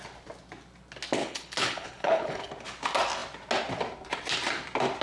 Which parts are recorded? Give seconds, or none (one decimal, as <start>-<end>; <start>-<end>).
0.0-1.2; 2.5-5.0